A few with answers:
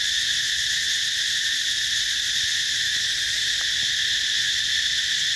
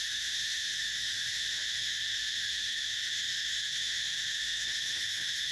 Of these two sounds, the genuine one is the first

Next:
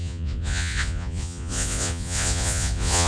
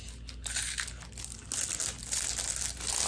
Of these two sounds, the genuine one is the second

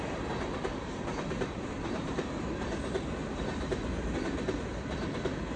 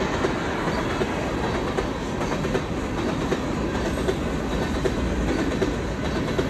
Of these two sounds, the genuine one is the second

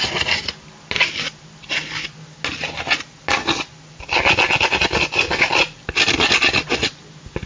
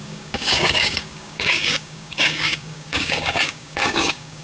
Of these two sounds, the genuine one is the first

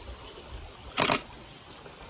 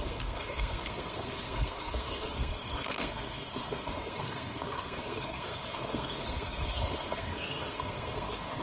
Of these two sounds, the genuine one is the first